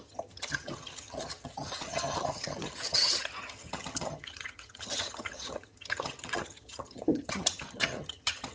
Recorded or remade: remade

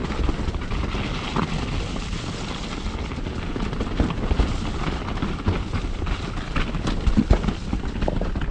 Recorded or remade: recorded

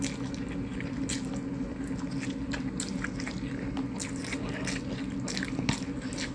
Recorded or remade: recorded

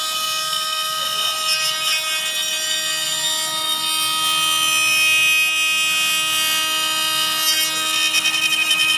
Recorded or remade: recorded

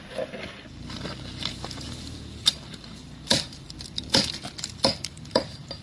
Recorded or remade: remade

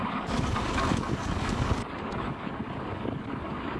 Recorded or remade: remade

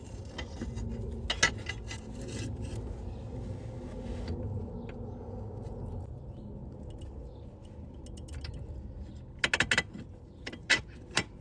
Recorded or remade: recorded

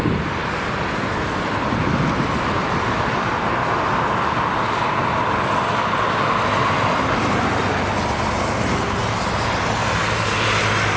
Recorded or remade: recorded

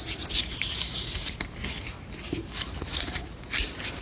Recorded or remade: recorded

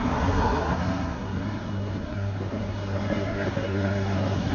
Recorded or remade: remade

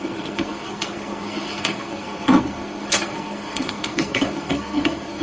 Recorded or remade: remade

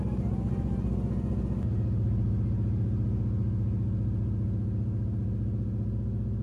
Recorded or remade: recorded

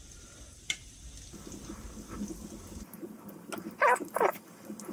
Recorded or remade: recorded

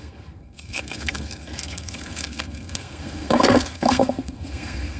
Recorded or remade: remade